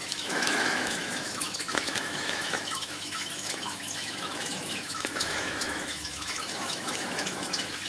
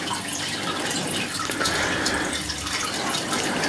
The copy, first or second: first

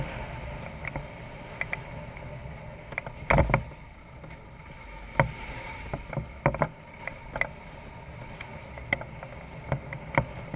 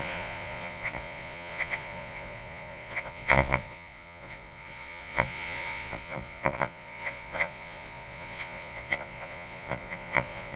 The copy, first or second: second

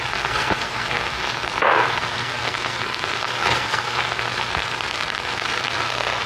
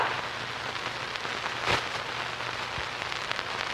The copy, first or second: first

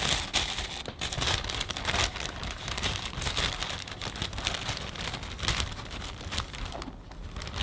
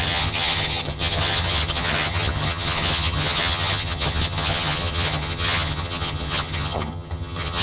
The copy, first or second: second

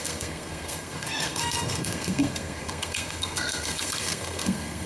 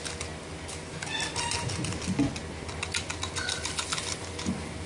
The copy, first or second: first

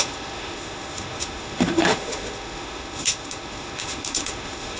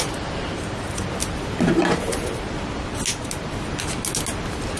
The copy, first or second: first